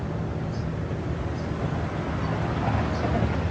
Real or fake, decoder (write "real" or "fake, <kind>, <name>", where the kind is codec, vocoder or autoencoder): real